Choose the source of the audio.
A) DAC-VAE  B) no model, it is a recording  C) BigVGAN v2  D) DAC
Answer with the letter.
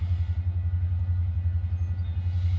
B